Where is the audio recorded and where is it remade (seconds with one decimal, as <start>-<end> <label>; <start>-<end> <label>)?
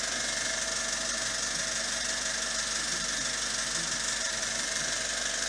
0.0-4.4 recorded; 4.4-5.5 remade